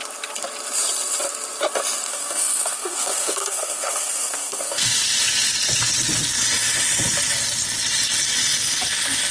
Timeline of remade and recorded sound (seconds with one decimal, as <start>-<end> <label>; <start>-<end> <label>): 0.0-2.1 recorded; 2.1-4.9 remade; 4.9-9.3 recorded